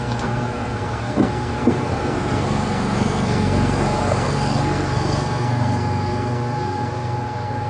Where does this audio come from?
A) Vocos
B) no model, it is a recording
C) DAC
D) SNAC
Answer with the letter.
D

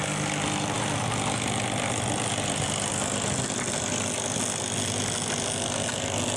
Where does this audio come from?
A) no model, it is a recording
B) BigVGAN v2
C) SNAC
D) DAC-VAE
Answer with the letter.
A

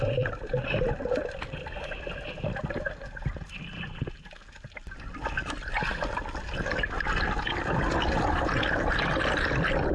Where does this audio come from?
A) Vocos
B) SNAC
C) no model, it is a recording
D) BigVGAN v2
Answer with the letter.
C